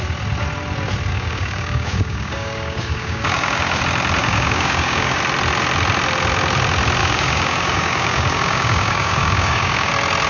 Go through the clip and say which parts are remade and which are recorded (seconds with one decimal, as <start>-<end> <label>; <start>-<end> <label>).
0.0-1.1 recorded; 1.1-3.8 remade; 3.8-4.2 recorded; 4.2-5.2 remade; 5.2-7.0 recorded; 7.0-9.9 remade; 9.9-10.3 recorded